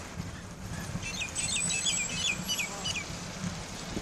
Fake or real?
real